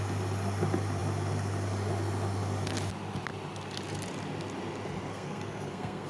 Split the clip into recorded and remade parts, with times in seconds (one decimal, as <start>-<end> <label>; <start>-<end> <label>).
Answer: 0.0-5.1 recorded; 5.1-6.1 remade